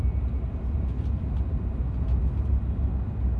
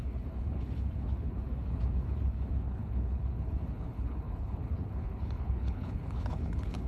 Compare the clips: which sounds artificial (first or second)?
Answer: second